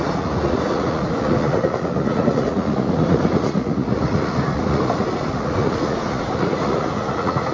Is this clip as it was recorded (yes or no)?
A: no